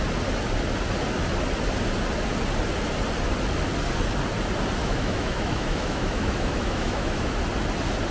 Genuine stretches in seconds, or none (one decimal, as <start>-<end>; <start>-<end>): 0.0-4.8; 7.3-8.1